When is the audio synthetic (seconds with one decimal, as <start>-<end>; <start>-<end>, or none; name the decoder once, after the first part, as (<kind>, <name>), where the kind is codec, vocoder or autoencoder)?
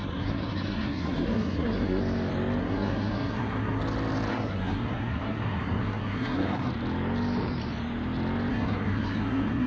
0.0-2.0 (codec, SNAC); 2.6-3.8; 4.3-6.7; 8.5-9.7